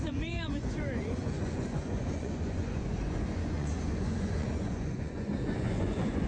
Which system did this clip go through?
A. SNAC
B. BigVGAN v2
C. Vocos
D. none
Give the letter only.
C